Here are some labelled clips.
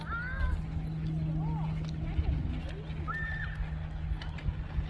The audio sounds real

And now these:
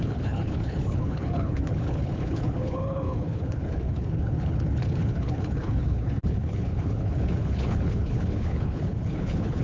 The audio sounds fake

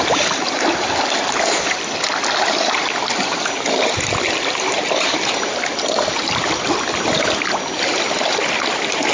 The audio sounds real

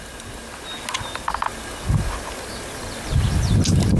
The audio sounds real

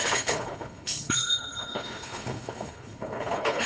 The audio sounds fake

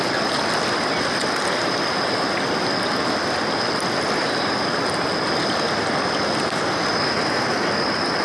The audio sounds real